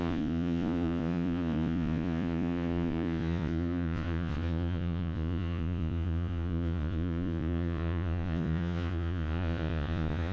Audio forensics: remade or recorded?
remade